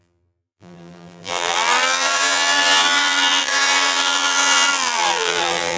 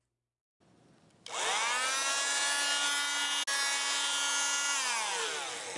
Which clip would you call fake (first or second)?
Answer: first